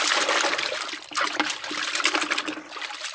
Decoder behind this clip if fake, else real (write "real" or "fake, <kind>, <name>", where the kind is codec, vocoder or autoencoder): real